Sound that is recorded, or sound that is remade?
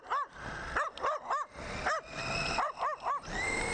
recorded